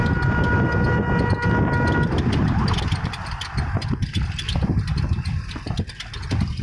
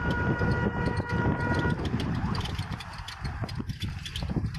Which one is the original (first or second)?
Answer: first